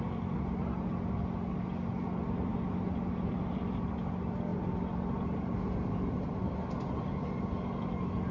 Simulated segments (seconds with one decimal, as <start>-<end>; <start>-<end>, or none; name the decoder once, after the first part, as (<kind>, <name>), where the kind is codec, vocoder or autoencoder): none